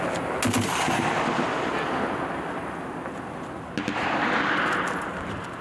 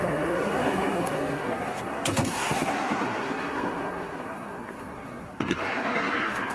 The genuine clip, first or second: first